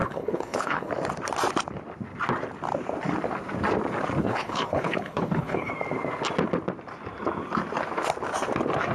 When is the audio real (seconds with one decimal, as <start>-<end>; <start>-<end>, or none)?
0.9-4.2; 5.7-8.9